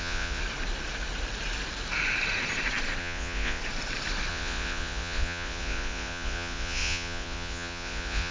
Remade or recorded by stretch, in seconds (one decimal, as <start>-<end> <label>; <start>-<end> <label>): 0.0-0.4 remade; 0.4-3.0 recorded; 3.0-3.6 remade; 3.6-4.3 recorded; 4.3-8.3 remade